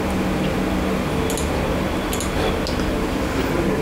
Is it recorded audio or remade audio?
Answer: recorded